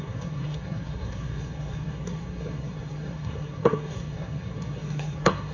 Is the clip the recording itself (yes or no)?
no